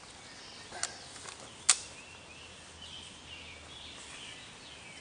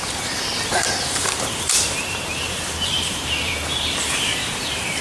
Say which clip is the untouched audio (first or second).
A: first